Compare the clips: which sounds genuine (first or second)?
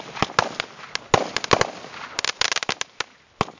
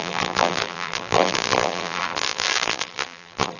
first